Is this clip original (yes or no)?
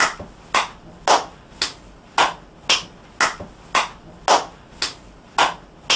yes